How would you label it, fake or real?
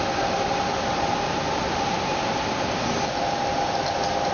real